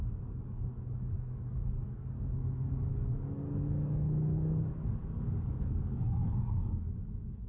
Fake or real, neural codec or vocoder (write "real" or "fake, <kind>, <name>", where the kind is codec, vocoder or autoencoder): fake, codec, DAC